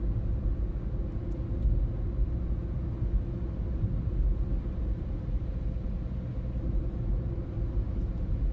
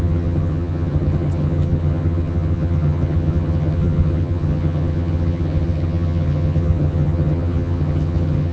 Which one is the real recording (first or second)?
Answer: first